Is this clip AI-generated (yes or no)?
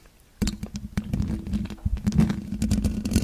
no